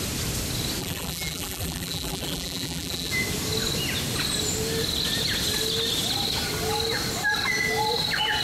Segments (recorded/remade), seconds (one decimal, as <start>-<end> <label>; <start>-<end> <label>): 0.0-0.8 recorded; 0.8-3.1 remade; 3.1-8.4 recorded